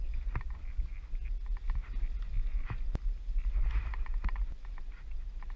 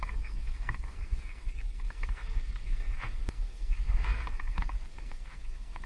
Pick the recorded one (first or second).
first